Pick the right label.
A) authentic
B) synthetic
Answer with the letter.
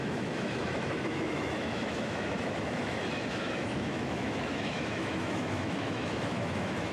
B